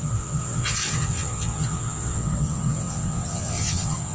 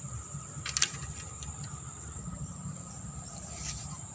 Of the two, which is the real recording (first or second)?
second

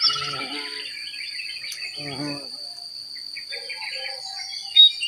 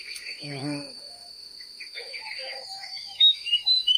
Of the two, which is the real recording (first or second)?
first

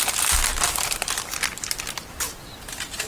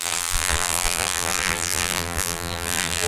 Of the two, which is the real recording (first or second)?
first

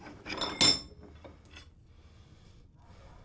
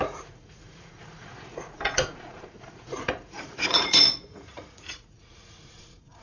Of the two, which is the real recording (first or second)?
first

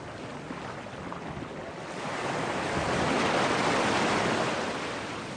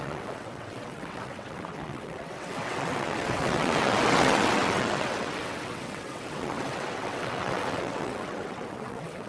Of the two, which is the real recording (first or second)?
first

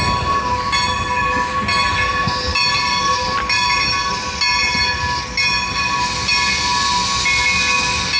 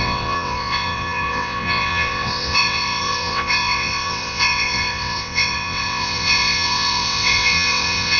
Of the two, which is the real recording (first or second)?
first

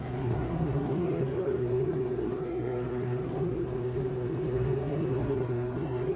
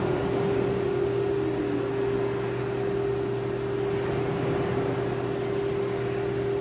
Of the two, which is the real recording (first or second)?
second